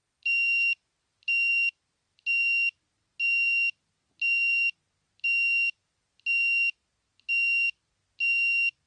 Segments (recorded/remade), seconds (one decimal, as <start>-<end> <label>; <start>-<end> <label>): 0.0-8.9 recorded